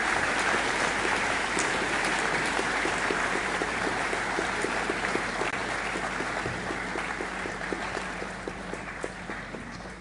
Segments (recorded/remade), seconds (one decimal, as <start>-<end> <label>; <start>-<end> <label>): 0.0-5.6 remade; 5.6-6.9 recorded; 6.9-10.0 remade

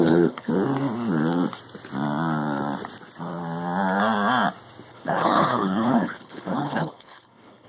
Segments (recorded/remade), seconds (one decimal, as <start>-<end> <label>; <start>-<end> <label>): 0.0-0.5 remade; 0.5-4.9 recorded; 4.9-7.7 remade

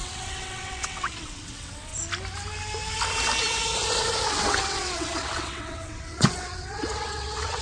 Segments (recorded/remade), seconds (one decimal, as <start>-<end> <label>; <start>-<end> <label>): 0.0-1.9 remade; 1.9-4.3 recorded; 4.3-7.6 remade

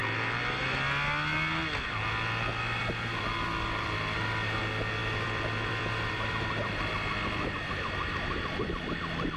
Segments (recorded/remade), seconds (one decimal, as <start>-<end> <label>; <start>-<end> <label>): 0.0-5.0 recorded; 5.0-8.8 remade; 8.8-9.4 recorded